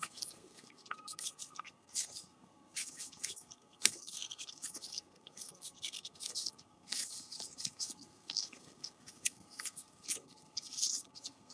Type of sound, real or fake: fake